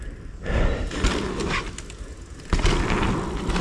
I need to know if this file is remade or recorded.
recorded